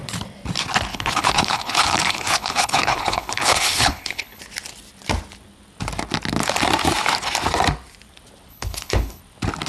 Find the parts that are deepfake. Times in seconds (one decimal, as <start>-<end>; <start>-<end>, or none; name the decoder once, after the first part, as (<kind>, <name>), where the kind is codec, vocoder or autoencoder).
0.9-4.4 (codec, HILCodec); 8.5-9.2